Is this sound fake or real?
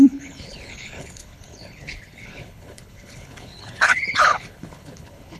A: fake